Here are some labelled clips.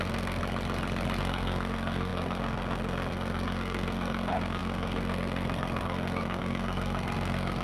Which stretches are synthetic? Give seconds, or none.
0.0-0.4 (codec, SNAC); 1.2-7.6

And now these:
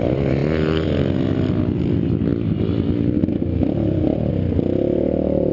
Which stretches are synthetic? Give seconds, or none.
none

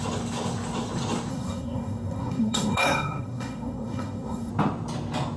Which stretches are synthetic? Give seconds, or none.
1.3-4.5 (codec, SNAC)

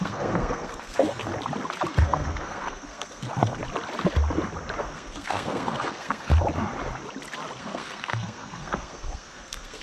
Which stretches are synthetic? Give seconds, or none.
0.0-1.3 (codec, SNAC); 1.9-3.6; 4.8-6.3; 7.6-9.8

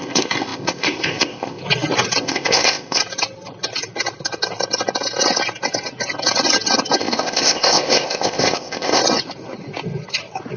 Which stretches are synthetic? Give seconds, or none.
0.0-1.6 (codec, ZipCodec); 2.2-3.0; 7.0-9.0

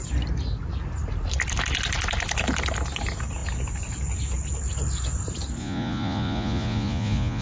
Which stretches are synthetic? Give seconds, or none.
5.6-7.4 (vocoder, Vocos)

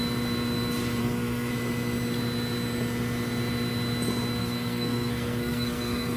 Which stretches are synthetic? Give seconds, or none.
1.0-1.5 (codec, SNAC); 4.4-6.2

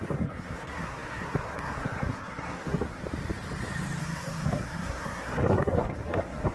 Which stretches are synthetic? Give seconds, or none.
0.0-3.0 (codec, SNAC); 4.0-6.5